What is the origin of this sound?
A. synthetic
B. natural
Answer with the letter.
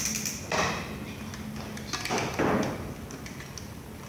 B